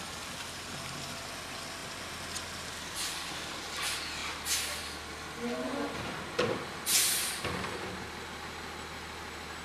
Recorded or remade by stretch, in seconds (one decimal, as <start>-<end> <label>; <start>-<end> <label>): 0.0-9.6 recorded